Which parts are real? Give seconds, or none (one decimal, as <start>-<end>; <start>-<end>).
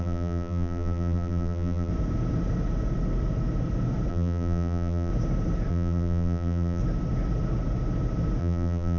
1.9-4.1; 5.1-5.7; 6.8-8.4